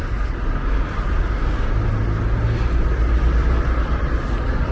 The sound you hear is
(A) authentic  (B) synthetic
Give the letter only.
A